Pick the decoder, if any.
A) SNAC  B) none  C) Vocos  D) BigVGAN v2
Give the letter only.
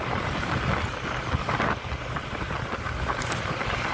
B